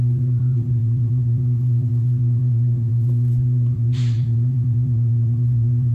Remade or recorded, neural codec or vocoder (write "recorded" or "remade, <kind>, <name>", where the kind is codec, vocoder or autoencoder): remade, vocoder, BigVGAN v2